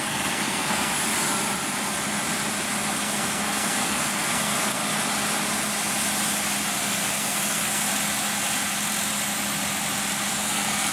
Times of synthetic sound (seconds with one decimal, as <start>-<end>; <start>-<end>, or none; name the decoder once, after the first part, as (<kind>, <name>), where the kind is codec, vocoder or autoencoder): 0.0-0.9 (codec, SNAC); 3.0-4.8; 6.8-7.9; 10.3-10.9